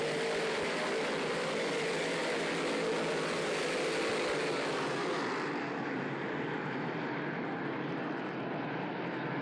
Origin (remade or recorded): recorded